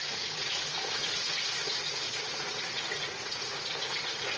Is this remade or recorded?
remade